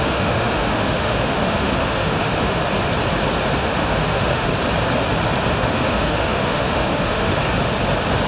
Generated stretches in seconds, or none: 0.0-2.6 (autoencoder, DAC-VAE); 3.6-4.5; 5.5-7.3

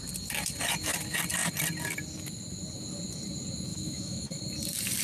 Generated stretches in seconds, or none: 3.7-4.4 (autoencoder, DAC-VAE)

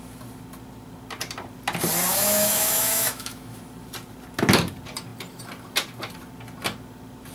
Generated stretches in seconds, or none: 2.1-3.6 (autoencoder, DAC-VAE)

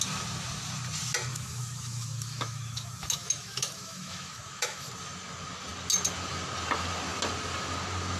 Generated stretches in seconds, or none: 1.3-4.9 (autoencoder, DAC-VAE)

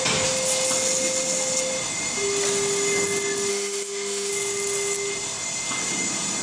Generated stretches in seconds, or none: 3.5-4.3 (autoencoder, DAC-VAE)

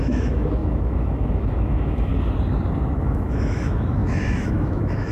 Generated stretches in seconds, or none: 0.0-2.1 (autoencoder, DAC-VAE); 3.0-5.1

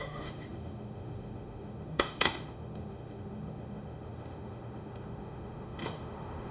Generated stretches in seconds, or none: 0.0-6.5 (autoencoder, DAC-VAE)